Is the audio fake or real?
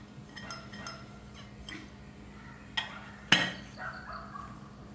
real